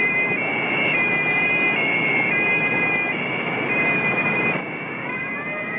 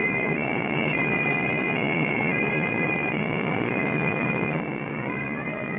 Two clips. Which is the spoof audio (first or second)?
second